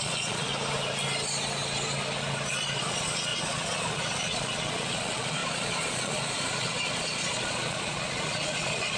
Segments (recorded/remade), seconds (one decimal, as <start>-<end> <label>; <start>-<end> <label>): 0.0-0.5 remade; 0.5-2.8 recorded; 2.8-9.0 remade